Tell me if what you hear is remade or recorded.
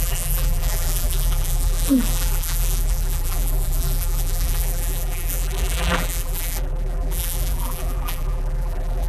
remade